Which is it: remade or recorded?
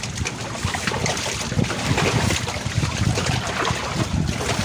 recorded